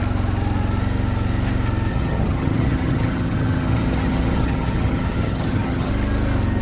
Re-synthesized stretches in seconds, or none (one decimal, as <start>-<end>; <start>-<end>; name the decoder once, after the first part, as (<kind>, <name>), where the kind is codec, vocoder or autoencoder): 1.9-5.9 (vocoder, HiFi-GAN)